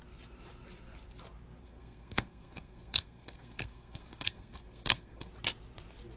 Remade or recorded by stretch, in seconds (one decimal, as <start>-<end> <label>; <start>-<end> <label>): 0.0-1.6 recorded; 1.6-5.3 remade; 5.3-6.2 recorded